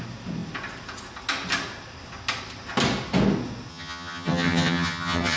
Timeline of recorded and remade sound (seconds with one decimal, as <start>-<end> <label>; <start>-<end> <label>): 0.0-3.7 recorded; 3.7-5.4 remade